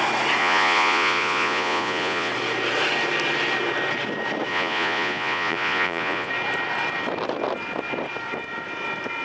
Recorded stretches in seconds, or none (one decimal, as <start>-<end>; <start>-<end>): 0.0-0.4; 2.3-4.5; 6.3-9.2